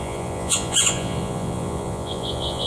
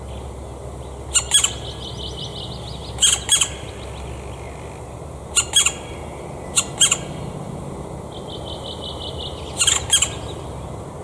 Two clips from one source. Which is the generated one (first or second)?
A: first